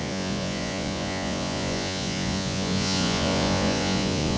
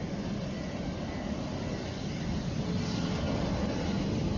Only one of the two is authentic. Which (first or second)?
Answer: second